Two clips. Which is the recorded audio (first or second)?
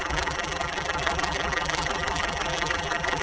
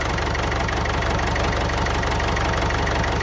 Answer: second